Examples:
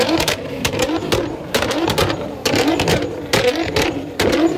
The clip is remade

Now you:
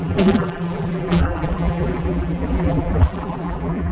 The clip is remade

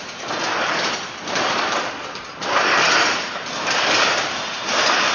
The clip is recorded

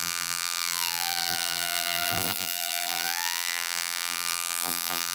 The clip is remade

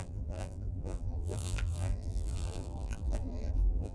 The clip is remade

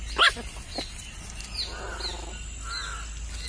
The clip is recorded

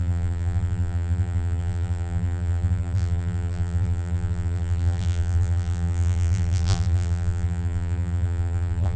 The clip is remade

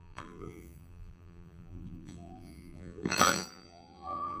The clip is remade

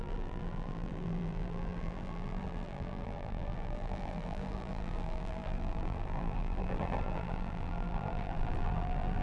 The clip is remade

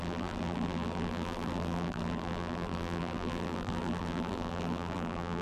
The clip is remade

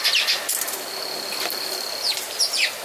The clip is recorded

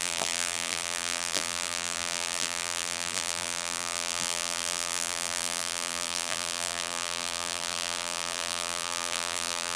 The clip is remade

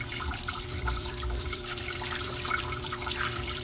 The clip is remade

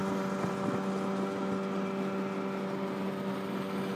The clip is recorded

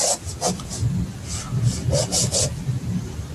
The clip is recorded